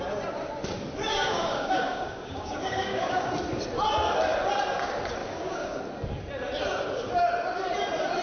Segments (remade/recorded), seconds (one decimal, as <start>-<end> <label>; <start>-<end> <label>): 0.0-1.0 recorded; 1.0-3.3 remade; 3.3-5.2 recorded; 5.2-5.8 remade; 5.8-8.2 recorded